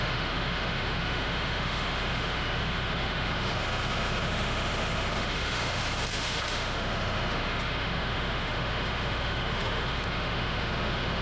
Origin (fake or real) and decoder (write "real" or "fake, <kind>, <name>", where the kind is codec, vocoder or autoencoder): fake, autoencoder, DAC-VAE